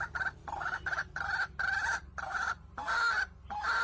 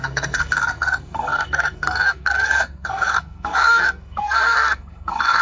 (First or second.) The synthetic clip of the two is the second